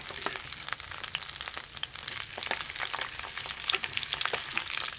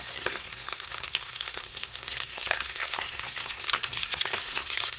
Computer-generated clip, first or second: second